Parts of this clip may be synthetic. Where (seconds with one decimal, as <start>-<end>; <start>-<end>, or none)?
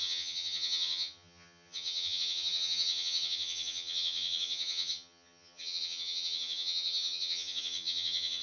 0.0-8.4